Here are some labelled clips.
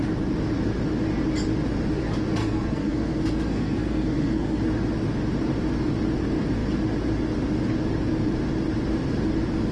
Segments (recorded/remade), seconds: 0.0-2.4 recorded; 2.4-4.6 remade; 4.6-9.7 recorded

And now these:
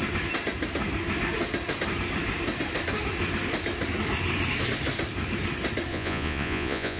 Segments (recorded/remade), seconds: 0.0-5.9 recorded; 5.9-7.0 remade

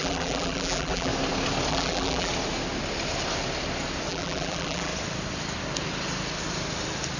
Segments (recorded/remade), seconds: 0.0-1.1 remade; 1.1-1.7 recorded; 1.7-2.3 remade; 2.3-4.1 recorded; 4.1-4.9 remade; 4.9-7.2 recorded

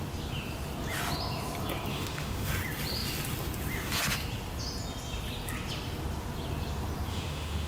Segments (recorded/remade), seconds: 0.0-1.9 recorded; 1.9-2.5 remade; 2.5-7.1 recorded; 7.1-7.7 remade